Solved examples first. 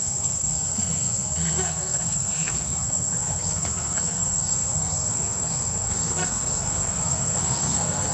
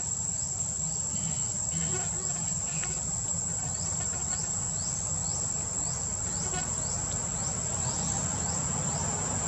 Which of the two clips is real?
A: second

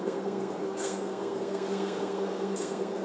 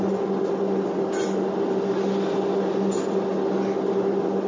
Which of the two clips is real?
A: second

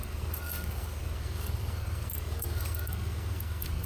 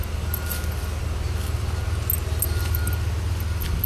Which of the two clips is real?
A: second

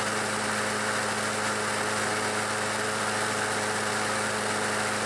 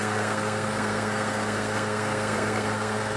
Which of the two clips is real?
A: first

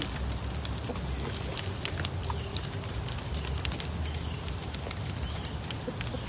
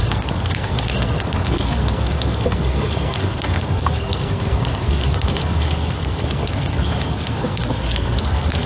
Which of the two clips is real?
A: first